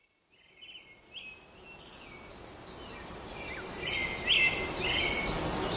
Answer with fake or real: real